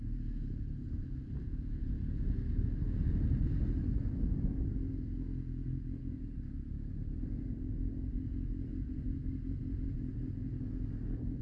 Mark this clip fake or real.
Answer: real